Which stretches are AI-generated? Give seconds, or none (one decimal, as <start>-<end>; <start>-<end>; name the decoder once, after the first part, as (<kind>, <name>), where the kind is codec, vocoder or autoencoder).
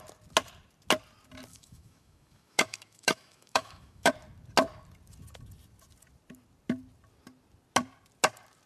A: 1.5-4.1 (autoencoder, DAC-VAE)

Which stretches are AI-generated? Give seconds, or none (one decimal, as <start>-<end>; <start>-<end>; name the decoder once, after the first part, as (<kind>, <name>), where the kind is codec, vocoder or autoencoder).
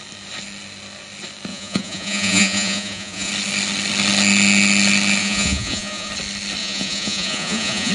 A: 1.5-3.3 (vocoder, Vocos); 5.2-6.1; 6.6-7.9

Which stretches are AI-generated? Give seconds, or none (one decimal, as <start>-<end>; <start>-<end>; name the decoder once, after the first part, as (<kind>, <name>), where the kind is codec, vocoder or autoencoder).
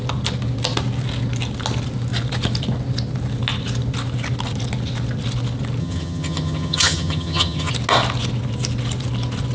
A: 5.8-7.7 (vocoder, HiFi-GAN)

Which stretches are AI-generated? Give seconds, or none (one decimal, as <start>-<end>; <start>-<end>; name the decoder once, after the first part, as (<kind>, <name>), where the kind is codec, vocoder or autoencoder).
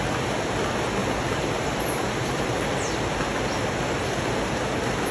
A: 1.0-2.7 (vocoder, BigVGAN v2)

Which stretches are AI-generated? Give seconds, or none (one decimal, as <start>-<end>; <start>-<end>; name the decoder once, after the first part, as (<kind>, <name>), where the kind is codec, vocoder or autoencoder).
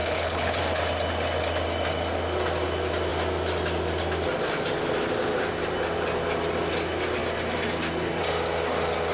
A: 0.0-0.6 (codec, HILCodec)